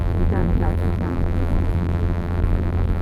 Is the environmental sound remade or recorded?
remade